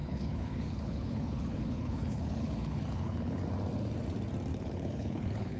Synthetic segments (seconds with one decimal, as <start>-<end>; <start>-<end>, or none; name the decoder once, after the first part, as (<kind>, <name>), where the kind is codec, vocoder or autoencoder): 0.0-3.4 (codec, HILCodec); 4.5-5.6